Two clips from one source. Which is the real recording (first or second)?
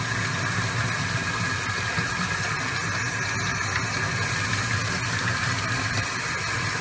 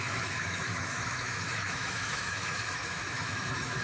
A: first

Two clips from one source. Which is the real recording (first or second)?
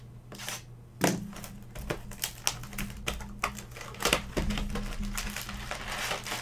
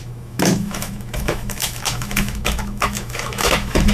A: first